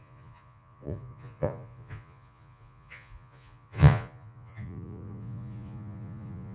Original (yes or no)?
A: no